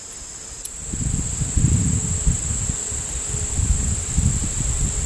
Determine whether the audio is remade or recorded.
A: recorded